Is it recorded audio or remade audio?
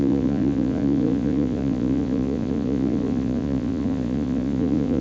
remade